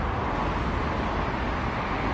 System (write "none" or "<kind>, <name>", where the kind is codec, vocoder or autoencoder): none